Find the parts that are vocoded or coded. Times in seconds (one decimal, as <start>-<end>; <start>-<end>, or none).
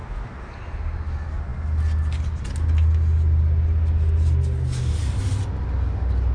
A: none